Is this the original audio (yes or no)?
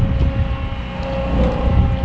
yes